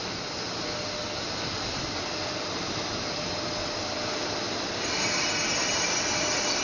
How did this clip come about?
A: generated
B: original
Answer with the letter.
B